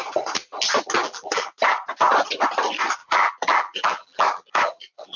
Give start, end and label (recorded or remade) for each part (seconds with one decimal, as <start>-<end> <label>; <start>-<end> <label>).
0.0-1.0 recorded; 1.0-1.5 remade; 1.5-3.0 recorded; 3.0-5.2 remade